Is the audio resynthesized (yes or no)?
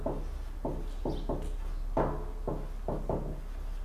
no